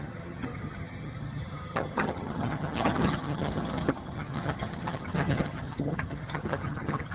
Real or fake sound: fake